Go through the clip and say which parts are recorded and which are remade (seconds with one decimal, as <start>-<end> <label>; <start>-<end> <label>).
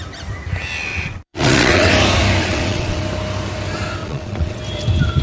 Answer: 0.0-0.9 recorded; 0.9-1.9 remade; 1.9-2.4 recorded; 2.4-3.0 remade; 3.0-4.0 recorded; 4.0-4.6 remade; 4.6-5.2 recorded